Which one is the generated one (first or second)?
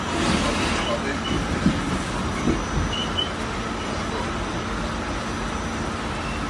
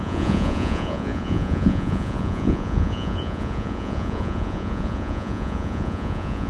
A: second